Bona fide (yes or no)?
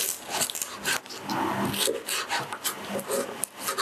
yes